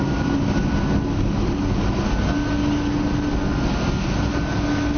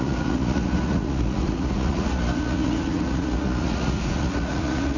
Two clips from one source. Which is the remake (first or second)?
second